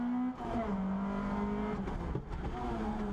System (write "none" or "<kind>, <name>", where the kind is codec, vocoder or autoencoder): none